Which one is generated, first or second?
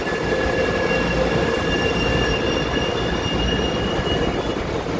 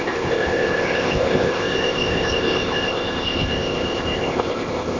second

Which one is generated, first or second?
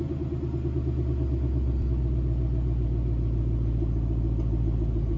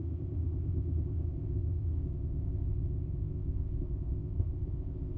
second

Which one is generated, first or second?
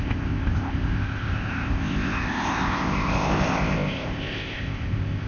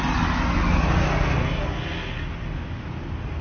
first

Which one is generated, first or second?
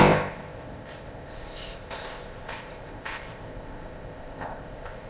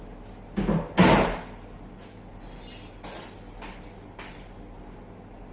first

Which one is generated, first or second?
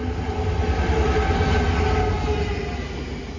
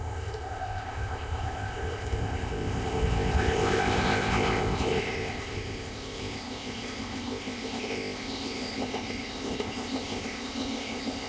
second